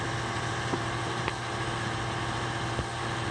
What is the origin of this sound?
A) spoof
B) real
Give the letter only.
B